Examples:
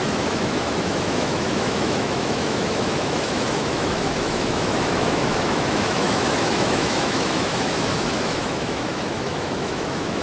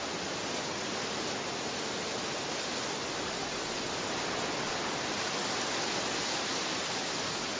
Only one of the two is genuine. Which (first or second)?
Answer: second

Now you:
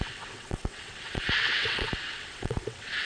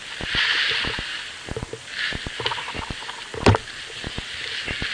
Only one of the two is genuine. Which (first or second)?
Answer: second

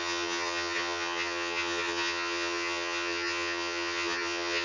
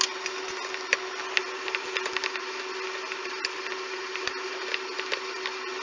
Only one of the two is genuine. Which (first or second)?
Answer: second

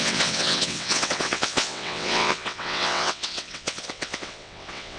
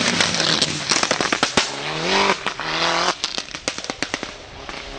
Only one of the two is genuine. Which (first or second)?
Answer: second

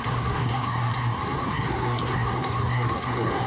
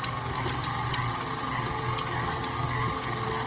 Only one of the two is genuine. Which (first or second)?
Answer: second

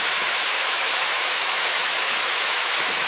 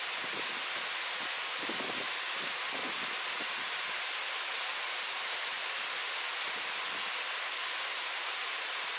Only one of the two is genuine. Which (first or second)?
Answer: second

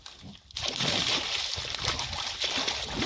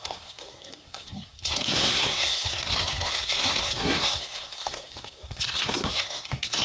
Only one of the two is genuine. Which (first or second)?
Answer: first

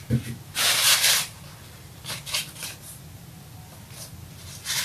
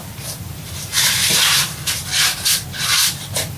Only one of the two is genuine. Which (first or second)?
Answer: first